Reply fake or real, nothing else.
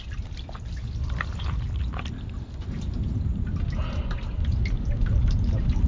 real